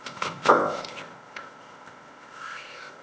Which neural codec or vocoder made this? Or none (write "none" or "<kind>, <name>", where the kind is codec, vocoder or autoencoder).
codec, ZipCodec